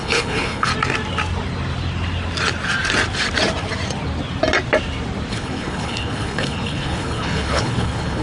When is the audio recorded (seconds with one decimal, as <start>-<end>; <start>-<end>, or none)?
0.7-5.3